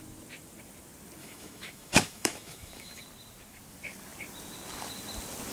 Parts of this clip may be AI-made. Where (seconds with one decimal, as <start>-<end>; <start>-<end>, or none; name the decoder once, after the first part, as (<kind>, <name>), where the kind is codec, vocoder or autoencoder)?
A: 1.2-3.0 (autoencoder, DAC-VAE)

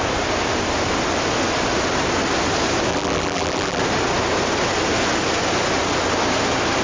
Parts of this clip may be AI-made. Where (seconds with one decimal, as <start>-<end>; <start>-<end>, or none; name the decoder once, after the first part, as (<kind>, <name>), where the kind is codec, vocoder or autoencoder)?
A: 2.9-3.8 (vocoder, BigVGAN v2)

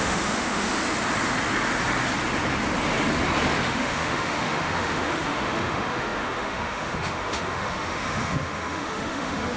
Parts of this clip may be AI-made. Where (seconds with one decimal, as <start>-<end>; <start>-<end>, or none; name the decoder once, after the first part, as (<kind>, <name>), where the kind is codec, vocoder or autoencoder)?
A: 0.0-0.8 (autoencoder, DAC-VAE); 3.6-9.6

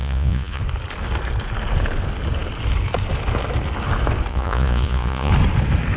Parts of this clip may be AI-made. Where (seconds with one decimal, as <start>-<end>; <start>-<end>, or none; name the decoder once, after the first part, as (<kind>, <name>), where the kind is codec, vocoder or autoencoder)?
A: 0.0-0.6 (vocoder, Vocos); 4.3-5.3

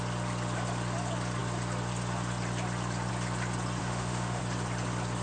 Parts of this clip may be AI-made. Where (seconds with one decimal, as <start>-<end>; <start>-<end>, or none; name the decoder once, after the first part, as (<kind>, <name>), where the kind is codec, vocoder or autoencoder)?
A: 3.8-4.4 (autoencoder, DAC-VAE)

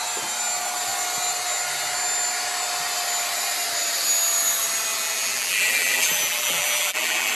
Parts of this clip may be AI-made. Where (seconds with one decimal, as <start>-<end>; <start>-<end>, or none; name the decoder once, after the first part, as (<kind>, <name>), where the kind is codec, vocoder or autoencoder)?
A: 4.9-7.3 (vocoder, BigVGAN v2)